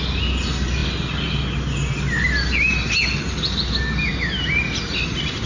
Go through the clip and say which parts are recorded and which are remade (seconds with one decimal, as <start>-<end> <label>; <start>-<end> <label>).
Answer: 0.0-5.5 recorded